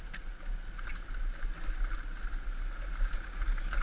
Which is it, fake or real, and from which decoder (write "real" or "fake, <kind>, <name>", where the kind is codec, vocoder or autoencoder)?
real